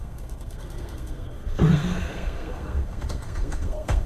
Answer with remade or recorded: remade